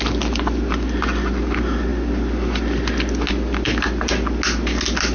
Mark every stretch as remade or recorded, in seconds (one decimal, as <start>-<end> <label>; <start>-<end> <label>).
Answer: 0.0-5.1 recorded